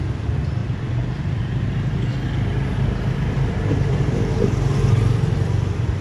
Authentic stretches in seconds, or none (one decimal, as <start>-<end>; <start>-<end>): 0.0-0.6; 1.2-2.5; 5.1-6.0